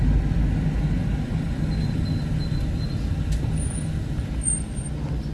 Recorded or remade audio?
recorded